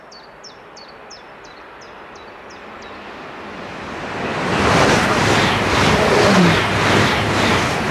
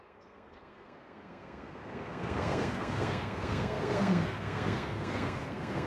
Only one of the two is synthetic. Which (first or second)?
second